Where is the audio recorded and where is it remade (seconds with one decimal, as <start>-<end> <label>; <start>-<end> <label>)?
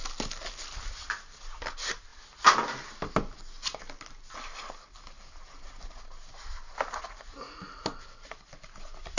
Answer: 0.0-9.2 recorded